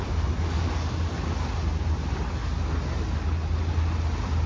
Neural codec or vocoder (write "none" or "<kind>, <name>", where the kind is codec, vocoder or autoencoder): none